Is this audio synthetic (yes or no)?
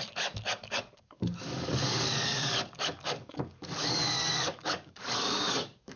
yes